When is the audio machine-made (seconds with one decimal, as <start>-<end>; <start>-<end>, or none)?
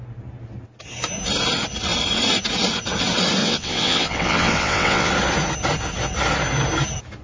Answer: 3.4-5.1